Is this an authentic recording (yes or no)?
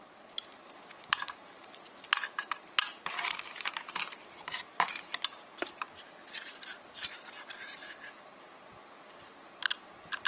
no